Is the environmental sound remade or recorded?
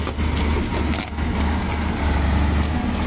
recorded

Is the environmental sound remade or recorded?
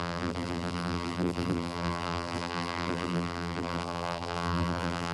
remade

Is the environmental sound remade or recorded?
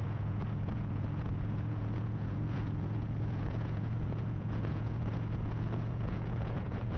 remade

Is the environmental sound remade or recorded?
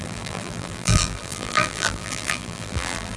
remade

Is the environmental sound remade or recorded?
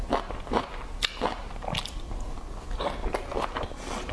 recorded